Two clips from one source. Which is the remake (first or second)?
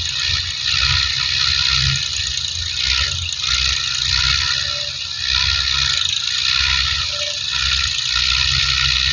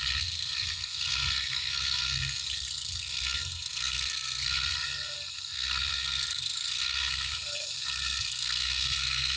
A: second